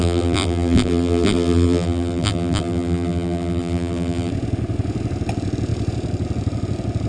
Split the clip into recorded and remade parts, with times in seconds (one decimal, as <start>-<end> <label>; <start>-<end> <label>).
0.0-4.3 remade; 4.3-7.1 recorded